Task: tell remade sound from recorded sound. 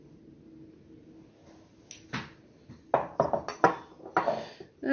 recorded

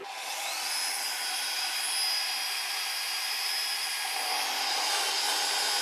remade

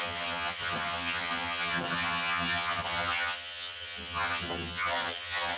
remade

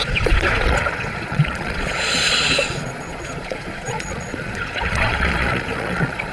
remade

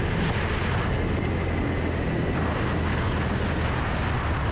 recorded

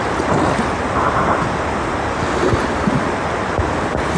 recorded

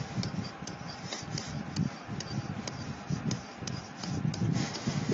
recorded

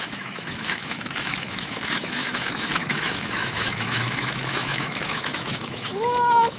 remade